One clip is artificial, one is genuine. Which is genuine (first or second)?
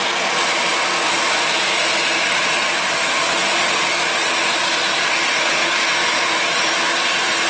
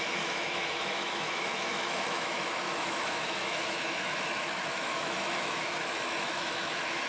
first